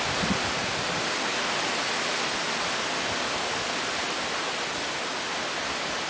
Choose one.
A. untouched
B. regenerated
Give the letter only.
A